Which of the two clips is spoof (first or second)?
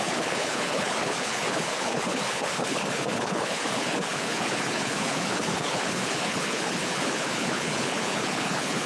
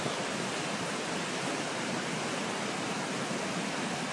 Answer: first